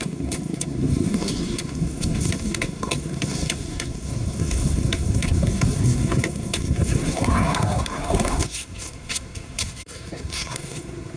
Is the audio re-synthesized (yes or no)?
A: yes